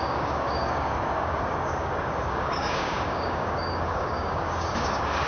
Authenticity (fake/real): fake